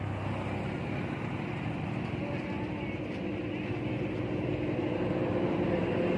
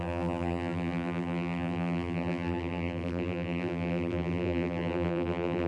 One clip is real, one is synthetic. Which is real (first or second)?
first